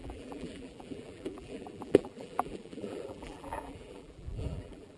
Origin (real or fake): fake